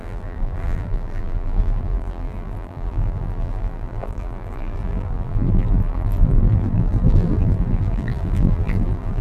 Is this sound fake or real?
fake